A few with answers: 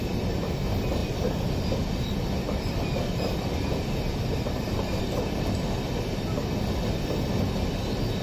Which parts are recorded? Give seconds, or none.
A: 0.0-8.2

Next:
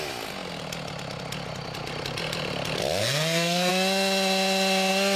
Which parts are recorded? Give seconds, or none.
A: 0.0-3.0; 3.7-5.2